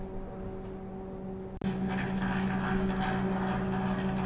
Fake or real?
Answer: real